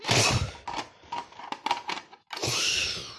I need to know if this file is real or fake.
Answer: real